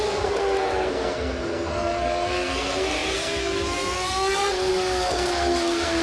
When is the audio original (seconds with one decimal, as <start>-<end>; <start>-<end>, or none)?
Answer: none